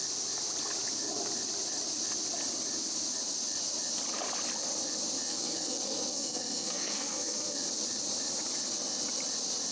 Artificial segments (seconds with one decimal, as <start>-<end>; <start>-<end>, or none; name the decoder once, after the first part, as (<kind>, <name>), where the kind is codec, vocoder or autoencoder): 5.3-7.7 (codec, SNAC)